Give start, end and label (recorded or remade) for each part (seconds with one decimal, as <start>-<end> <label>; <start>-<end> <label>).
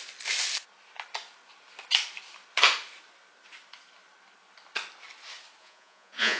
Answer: 0.0-5.6 recorded; 5.6-6.4 remade